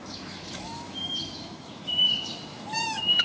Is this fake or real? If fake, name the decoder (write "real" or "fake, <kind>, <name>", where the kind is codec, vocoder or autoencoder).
fake, autoencoder, DAC-VAE